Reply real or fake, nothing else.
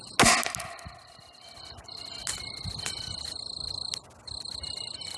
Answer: real